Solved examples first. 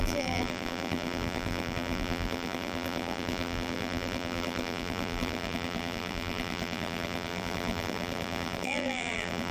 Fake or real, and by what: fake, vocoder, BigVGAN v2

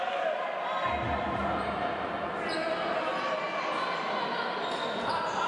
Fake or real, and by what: real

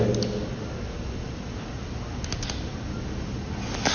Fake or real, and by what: real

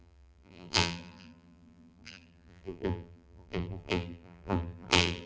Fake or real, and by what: fake, vocoder, BigVGAN v2